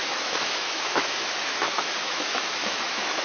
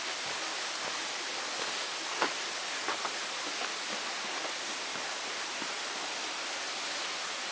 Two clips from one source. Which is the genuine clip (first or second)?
second